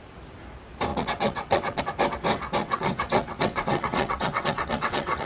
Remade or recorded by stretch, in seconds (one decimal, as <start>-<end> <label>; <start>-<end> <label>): 0.0-0.9 recorded; 0.9-1.8 remade; 1.8-2.6 recorded; 2.6-5.3 remade